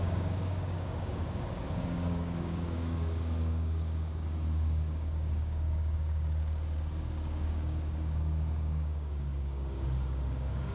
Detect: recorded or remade remade